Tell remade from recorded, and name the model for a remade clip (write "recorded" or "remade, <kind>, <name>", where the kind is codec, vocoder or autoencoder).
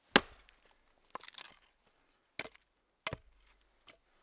recorded